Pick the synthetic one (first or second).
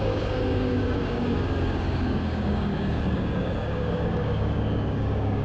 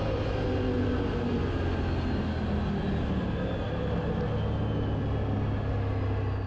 first